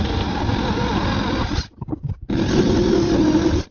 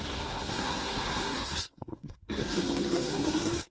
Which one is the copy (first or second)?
second